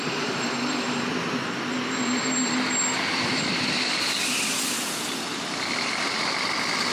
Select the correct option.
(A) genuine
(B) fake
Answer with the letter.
B